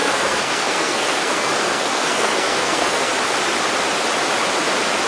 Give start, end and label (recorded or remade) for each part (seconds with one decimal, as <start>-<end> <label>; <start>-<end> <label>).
0.0-3.1 remade; 3.1-5.1 recorded